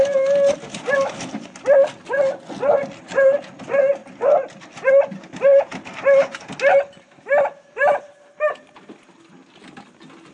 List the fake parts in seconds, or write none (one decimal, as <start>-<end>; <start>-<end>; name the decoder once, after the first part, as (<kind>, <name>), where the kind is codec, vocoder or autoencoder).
none